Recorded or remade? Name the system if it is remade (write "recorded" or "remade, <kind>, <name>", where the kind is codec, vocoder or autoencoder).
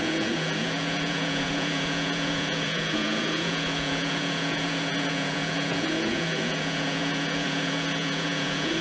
remade, vocoder, Vocos